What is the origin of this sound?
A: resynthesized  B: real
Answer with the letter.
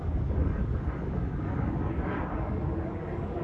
A